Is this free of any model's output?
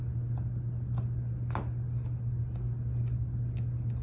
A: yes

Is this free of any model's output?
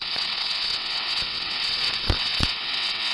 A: no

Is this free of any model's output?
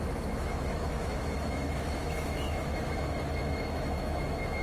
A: no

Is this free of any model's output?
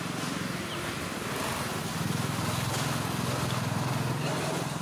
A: yes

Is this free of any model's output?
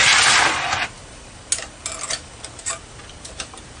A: yes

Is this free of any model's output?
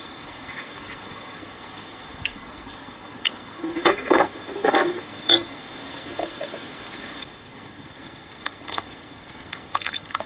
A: no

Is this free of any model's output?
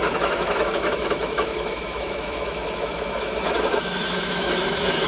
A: no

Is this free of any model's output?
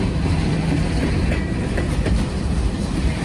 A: no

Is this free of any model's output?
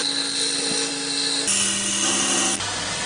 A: yes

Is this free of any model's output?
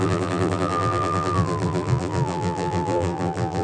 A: no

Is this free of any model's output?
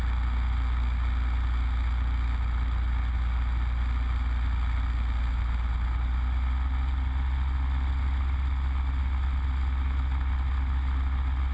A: yes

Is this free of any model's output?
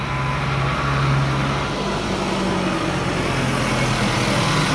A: yes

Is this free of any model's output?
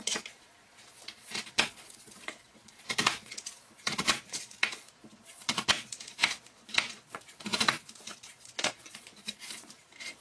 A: no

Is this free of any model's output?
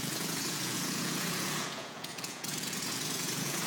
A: no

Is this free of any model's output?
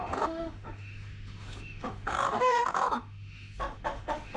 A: no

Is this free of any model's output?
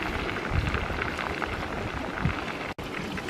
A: yes